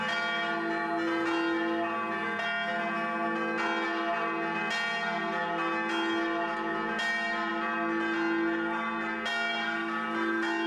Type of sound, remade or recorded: recorded